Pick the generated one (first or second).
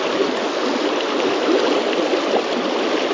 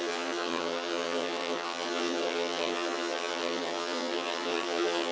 second